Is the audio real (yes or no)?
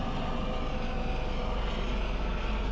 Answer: yes